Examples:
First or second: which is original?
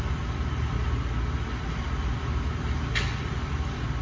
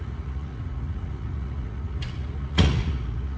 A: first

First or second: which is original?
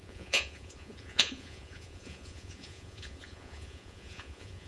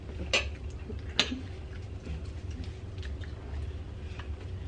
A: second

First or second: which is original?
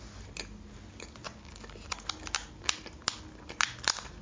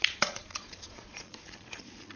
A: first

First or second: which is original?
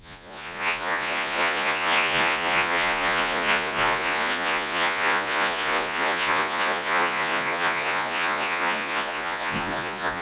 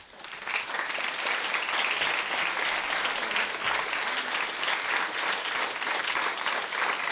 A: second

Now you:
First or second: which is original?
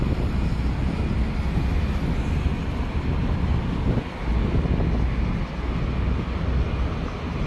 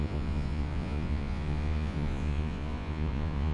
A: first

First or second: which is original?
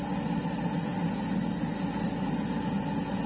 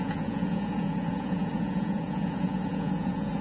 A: first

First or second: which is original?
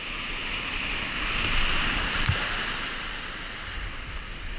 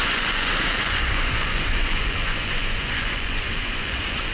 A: first